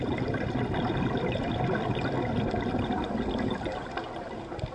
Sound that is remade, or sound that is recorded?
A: recorded